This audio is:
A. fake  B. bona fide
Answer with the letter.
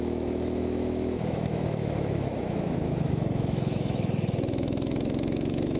A